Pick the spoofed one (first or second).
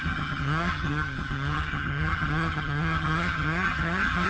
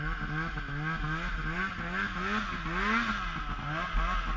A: first